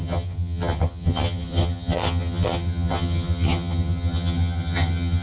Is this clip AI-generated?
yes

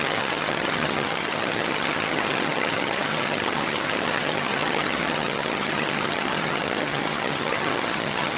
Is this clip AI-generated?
yes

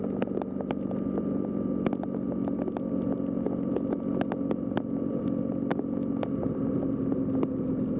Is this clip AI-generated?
no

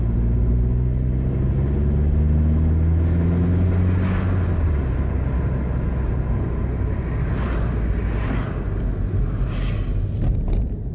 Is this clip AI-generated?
no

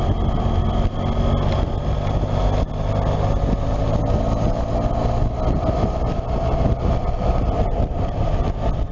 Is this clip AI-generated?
no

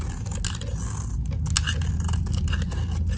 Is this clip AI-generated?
no